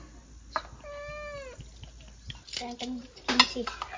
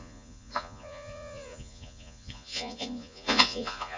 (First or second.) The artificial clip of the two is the second